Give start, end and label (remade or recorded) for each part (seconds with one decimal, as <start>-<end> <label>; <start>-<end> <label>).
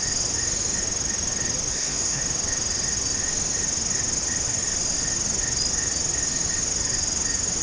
0.0-1.7 recorded; 1.7-2.2 remade; 2.2-7.6 recorded